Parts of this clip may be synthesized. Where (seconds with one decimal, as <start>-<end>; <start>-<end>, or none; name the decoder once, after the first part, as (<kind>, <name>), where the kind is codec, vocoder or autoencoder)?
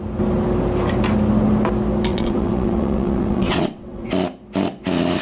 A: 2.1-4.1 (vocoder, WaveNeXt)